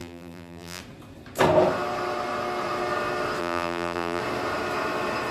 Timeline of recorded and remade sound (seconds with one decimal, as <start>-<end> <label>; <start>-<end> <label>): 0.0-0.8 remade; 0.8-3.4 recorded; 3.4-4.2 remade; 4.2-5.3 recorded